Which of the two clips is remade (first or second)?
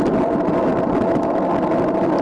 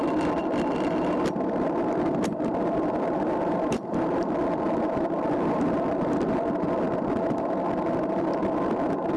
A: second